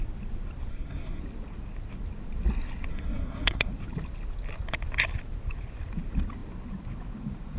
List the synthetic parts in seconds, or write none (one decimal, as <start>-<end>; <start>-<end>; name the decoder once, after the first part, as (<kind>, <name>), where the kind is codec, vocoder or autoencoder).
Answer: 0.7-1.2 (codec, SNAC); 2.9-3.7